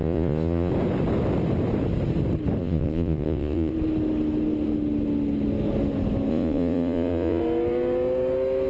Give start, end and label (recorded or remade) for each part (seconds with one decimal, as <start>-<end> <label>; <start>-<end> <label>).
0.0-0.7 remade; 0.7-2.6 recorded; 2.6-3.7 remade; 3.7-6.3 recorded; 6.3-7.4 remade; 7.4-8.7 recorded